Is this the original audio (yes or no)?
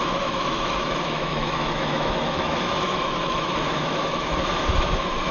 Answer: no